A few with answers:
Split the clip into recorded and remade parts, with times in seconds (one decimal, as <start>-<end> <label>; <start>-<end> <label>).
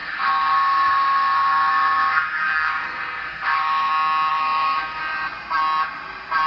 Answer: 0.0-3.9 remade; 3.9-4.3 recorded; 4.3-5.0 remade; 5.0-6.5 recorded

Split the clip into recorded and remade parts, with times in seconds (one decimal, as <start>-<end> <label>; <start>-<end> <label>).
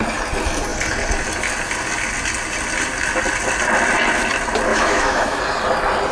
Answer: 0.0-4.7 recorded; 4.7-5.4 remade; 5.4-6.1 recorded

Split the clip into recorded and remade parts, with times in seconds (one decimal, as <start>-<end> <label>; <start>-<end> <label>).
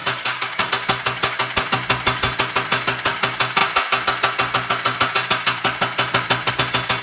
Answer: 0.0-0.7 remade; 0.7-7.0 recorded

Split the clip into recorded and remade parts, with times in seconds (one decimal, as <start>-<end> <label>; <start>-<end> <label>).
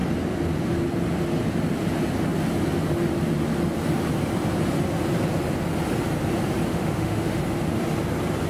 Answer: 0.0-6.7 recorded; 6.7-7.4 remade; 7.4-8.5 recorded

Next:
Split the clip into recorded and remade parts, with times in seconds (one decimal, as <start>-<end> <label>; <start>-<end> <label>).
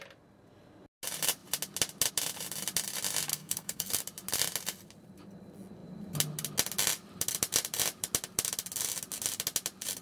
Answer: 0.0-3.3 recorded; 3.3-3.9 remade; 3.9-10.0 recorded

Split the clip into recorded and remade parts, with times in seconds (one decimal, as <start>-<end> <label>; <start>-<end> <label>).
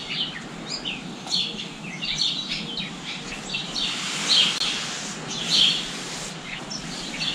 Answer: 0.0-7.3 recorded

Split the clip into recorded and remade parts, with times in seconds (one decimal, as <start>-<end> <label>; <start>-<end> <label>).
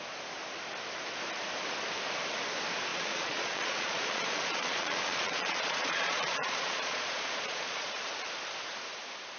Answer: 0.0-2.9 recorded; 2.9-8.0 remade; 8.0-9.4 recorded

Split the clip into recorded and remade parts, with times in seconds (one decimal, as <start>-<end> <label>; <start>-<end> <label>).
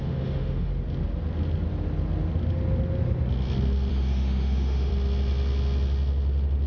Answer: 0.0-0.7 remade; 0.7-3.9 recorded; 3.9-4.9 remade; 4.9-6.7 recorded